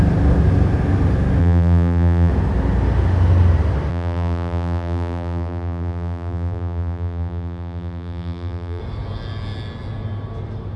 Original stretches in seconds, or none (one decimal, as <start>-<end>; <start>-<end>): 0.0-1.4; 2.3-3.9; 8.8-10.8